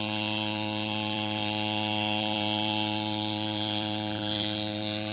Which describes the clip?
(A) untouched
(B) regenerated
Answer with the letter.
B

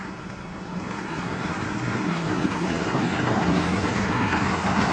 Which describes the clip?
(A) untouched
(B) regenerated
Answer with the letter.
B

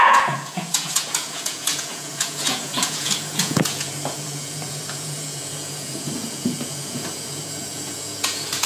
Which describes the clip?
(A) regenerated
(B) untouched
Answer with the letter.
A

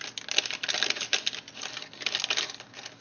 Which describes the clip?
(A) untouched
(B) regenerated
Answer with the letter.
A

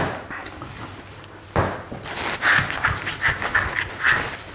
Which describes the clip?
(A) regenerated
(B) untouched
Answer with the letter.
B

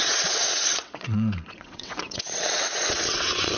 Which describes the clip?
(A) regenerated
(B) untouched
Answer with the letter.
A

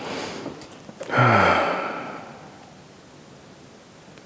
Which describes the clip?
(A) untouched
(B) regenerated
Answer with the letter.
A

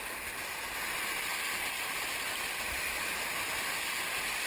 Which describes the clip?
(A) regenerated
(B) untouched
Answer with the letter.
B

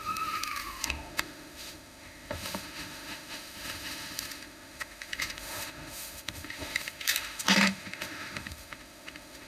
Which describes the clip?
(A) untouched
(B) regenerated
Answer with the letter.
B